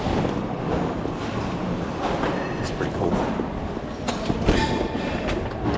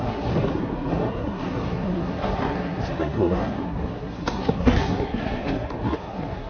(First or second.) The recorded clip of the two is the first